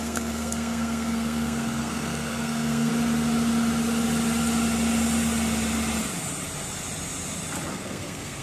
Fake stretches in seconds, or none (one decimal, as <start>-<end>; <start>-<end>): 0.0-2.9; 7.7-8.4